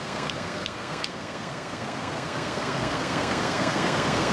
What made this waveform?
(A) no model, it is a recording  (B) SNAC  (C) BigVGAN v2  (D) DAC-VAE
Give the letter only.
B